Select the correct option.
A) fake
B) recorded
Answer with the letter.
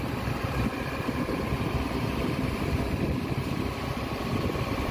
A